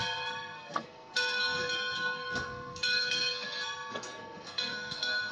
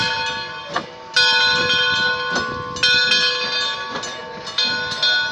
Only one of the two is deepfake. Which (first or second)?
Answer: first